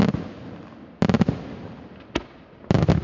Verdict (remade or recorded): recorded